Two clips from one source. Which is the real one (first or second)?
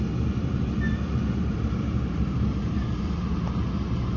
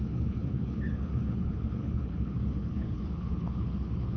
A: first